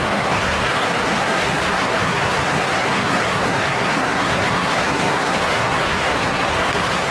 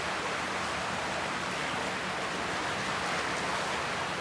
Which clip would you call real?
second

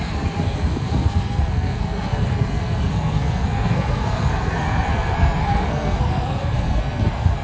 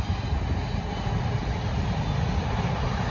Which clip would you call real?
second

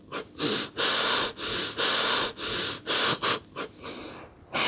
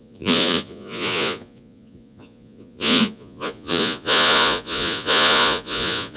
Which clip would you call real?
first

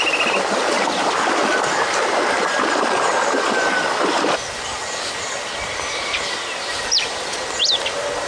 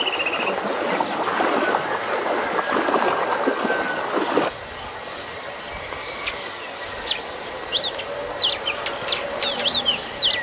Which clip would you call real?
second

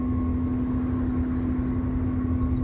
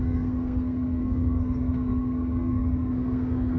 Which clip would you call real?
first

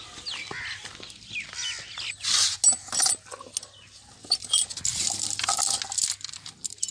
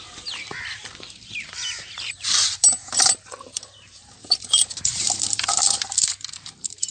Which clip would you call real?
first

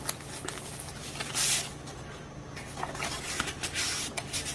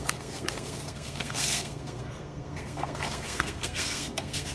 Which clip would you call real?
first